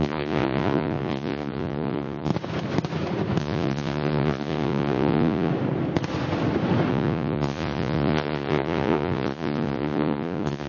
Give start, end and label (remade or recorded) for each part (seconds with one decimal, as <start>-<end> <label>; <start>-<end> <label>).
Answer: 0.0-2.3 remade; 2.3-3.4 recorded; 3.4-5.5 remade; 5.5-6.9 recorded; 6.9-10.7 remade